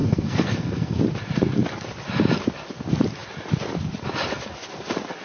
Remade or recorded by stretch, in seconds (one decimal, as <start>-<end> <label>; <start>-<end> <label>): 0.0-1.0 remade; 1.0-5.2 recorded